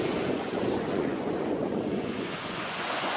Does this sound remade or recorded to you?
remade